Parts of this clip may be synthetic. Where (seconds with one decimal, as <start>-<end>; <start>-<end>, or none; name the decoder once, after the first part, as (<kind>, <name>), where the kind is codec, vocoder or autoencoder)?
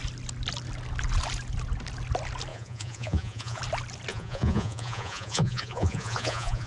2.5-3.6 (vocoder, Vocos); 4.1-6.7